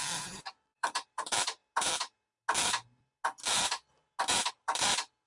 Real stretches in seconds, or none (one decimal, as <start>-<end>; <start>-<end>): 1.6-4.5